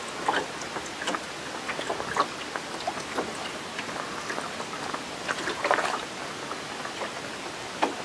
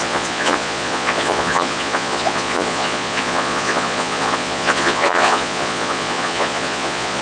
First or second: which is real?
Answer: first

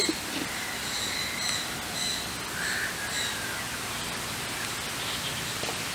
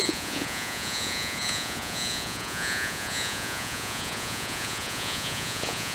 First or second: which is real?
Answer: first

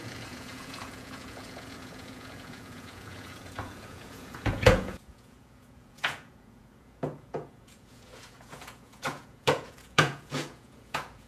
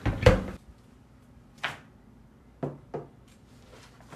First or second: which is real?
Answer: second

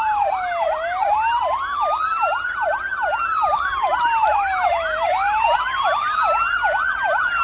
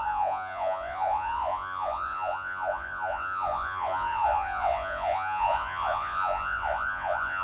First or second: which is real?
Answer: first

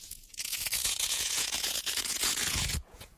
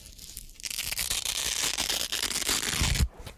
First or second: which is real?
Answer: second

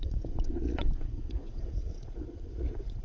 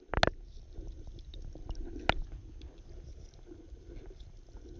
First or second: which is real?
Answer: second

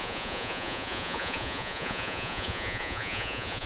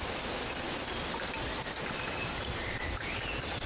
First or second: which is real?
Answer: second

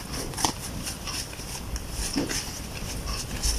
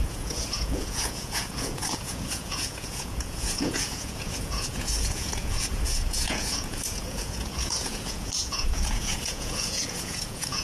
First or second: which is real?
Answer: first